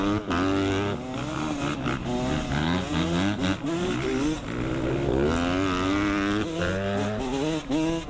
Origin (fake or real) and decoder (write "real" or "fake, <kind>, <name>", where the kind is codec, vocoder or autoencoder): real